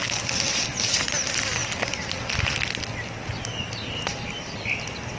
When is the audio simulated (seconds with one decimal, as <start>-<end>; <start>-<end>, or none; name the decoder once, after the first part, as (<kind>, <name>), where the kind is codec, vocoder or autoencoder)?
none

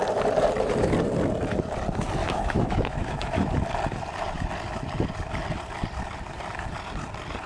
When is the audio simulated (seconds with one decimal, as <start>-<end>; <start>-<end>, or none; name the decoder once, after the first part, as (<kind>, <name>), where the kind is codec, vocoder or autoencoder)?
2.2-3.5 (autoencoder, DAC-VAE)